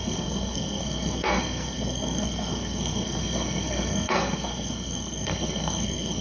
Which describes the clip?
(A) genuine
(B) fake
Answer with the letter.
B